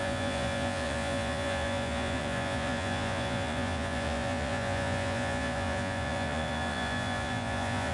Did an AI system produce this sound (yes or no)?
yes